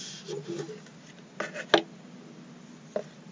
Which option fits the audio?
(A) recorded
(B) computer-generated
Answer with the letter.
A